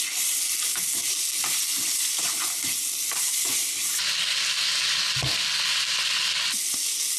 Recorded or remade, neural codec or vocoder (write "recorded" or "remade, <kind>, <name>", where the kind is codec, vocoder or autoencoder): recorded